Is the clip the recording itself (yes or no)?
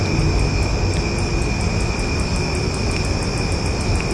yes